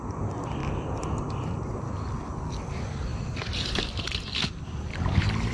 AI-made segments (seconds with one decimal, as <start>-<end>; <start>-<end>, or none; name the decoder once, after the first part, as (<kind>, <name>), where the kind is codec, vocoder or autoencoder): none